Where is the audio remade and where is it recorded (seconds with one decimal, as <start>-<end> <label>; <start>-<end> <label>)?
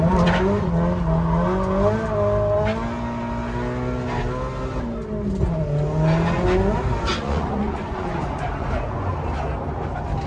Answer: 0.0-7.1 recorded; 7.1-9.1 remade; 9.1-10.3 recorded